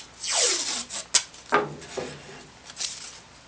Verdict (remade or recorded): recorded